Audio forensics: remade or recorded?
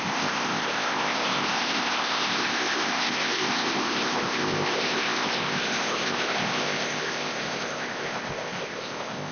remade